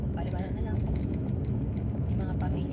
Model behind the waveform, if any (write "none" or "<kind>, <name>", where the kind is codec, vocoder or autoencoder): autoencoder, DAC-VAE